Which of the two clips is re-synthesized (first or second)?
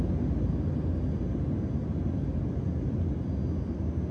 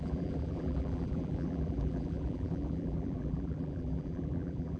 second